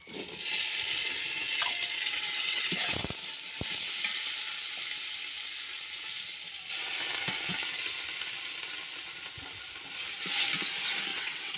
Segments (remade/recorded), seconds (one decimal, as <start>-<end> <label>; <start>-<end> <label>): 0.0-2.1 recorded; 2.1-3.0 remade; 3.0-11.1 recorded; 11.1-11.6 remade